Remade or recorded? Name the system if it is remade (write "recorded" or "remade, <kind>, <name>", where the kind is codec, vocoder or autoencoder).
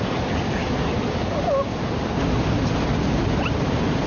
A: recorded